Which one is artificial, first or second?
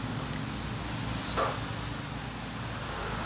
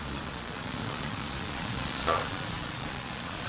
second